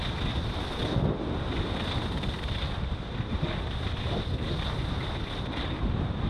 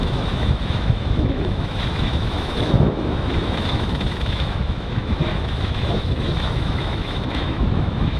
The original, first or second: first